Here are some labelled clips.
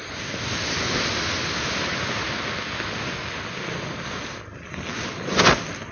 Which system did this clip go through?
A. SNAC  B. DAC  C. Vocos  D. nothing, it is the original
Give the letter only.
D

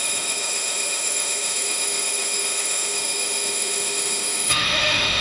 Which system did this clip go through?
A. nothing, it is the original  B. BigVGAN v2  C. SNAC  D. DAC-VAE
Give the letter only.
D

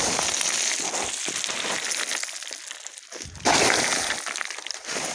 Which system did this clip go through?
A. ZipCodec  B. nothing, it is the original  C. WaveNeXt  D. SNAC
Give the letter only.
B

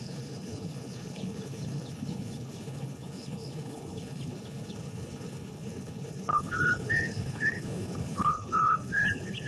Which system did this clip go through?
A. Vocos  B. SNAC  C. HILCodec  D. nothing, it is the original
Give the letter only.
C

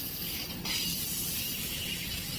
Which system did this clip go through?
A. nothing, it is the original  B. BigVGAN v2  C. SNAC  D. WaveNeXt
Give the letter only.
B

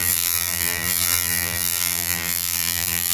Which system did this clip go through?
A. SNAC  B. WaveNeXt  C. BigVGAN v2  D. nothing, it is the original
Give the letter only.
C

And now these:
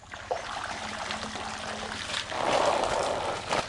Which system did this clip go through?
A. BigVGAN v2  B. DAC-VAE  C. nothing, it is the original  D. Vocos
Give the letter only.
C